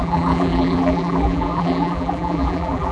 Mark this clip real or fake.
fake